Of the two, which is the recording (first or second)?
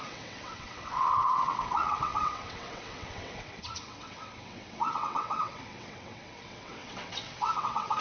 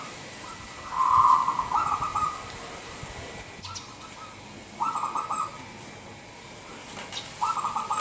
second